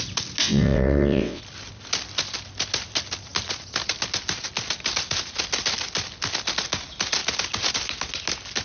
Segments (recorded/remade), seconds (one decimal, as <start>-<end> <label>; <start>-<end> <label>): 0.0-0.4 recorded; 0.4-1.4 remade; 1.4-8.6 recorded